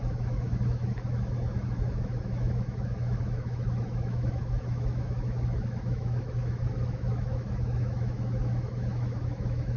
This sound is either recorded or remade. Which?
remade